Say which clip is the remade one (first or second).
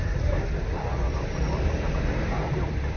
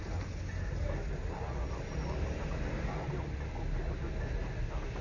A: first